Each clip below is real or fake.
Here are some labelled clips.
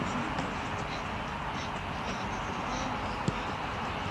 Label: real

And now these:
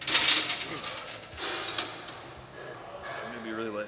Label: real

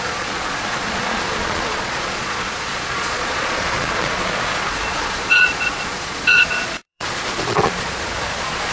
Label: fake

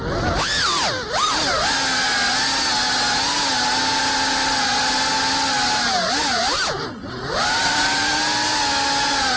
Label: real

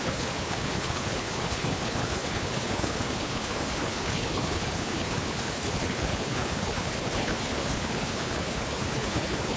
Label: fake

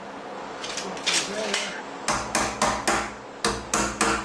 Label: real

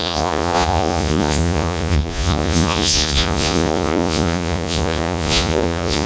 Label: fake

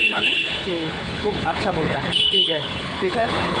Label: fake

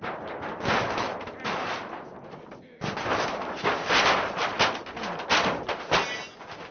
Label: real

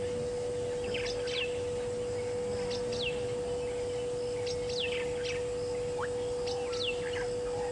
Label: real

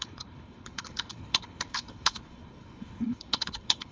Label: fake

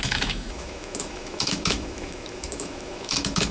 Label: fake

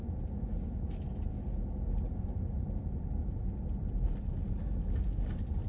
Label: real